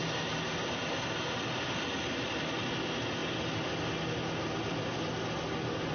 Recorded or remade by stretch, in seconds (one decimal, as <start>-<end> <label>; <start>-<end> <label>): 0.0-5.9 recorded